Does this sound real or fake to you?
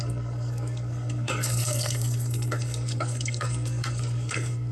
fake